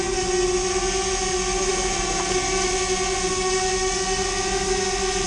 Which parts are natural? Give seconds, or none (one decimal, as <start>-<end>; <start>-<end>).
0.0-5.3